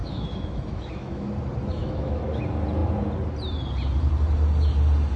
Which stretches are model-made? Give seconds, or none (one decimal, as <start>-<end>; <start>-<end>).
0.0-1.3; 1.8-2.4